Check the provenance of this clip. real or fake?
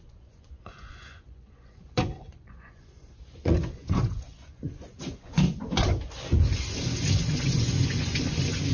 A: fake